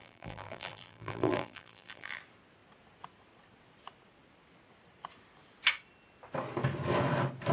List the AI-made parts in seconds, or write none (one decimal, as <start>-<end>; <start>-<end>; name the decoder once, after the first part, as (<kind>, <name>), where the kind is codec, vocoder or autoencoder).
0.0-2.2 (vocoder, BigVGAN v2)